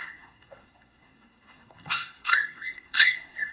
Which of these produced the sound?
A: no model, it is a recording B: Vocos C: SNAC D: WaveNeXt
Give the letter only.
C